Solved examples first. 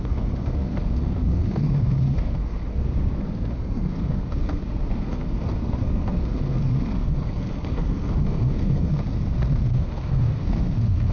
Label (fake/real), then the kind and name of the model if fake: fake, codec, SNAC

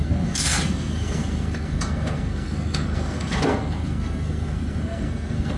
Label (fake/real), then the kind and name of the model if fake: fake, codec, SNAC